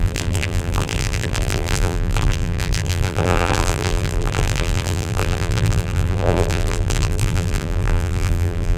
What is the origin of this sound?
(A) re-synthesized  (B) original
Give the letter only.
A